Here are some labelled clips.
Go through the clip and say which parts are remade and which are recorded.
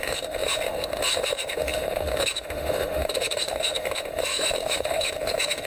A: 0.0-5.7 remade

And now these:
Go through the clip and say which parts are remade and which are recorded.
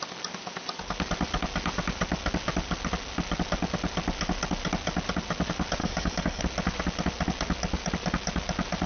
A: 0.0-5.8 recorded; 5.8-6.4 remade; 6.4-8.9 recorded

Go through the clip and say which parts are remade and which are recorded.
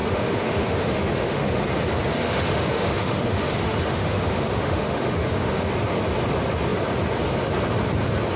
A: 0.0-1.6 remade; 1.6-2.2 recorded; 2.2-5.7 remade; 5.7-8.4 recorded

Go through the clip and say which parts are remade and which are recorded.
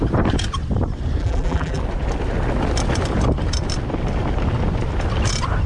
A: 0.0-1.2 recorded; 1.2-1.8 remade; 1.8-5.7 recorded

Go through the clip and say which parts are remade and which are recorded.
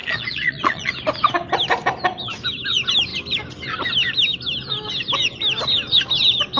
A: 0.0-0.9 remade; 0.9-6.6 recorded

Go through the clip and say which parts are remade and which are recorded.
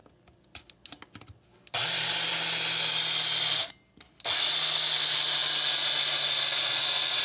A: 0.0-7.2 recorded